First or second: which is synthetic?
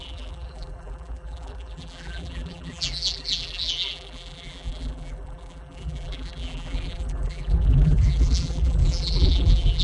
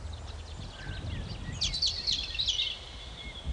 first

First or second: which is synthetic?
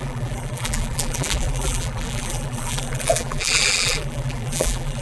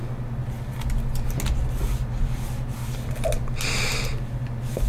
first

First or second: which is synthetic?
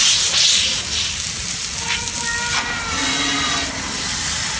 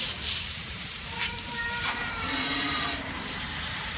second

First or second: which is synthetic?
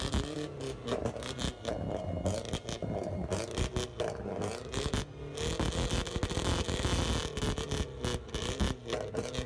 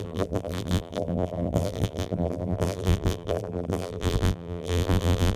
second